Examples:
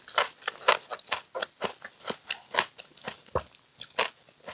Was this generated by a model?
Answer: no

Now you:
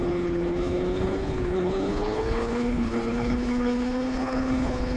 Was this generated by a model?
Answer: yes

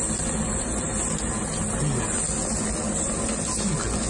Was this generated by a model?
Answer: no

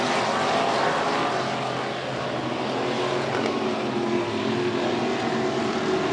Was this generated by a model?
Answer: no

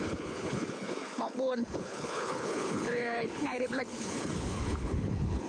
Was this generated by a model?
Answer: yes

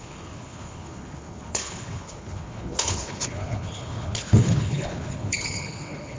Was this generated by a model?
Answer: yes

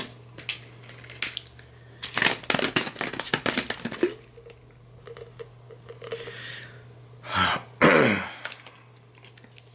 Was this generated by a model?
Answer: no